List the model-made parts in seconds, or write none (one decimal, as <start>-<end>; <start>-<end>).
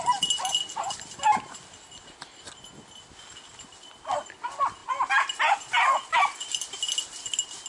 none